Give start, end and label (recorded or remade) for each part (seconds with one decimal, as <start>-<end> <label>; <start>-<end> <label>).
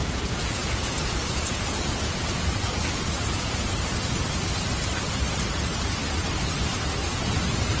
0.0-3.7 remade; 3.7-7.8 recorded